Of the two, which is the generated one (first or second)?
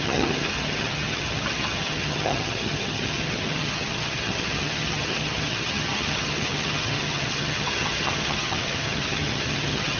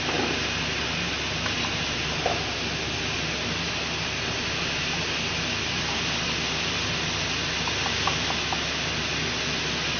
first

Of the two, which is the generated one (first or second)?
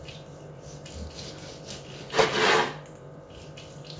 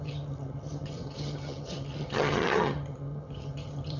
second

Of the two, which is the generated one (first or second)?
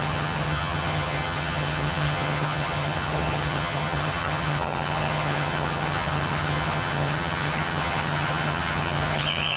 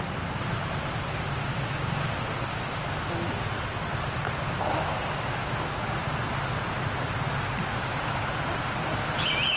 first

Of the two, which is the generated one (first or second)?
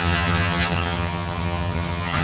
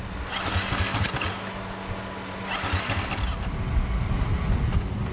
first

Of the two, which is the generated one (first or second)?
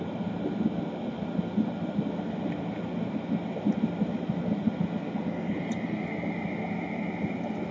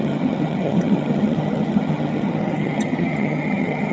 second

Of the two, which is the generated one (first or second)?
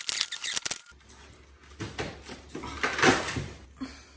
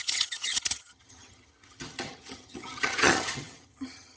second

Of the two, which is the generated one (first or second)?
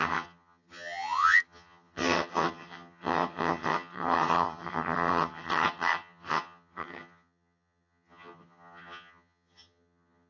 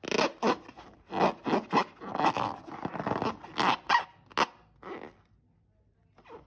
first